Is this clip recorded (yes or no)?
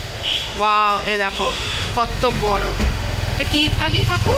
no